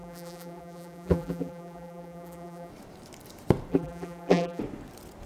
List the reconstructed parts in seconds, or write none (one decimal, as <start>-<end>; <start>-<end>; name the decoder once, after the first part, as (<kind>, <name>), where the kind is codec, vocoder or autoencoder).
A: 0.0-2.7 (vocoder, BigVGAN v2); 3.7-4.6